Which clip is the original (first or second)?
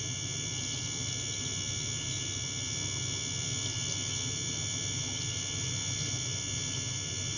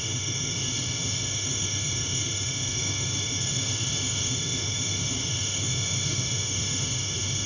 first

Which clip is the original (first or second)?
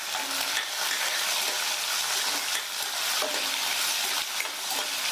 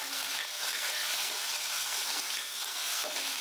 first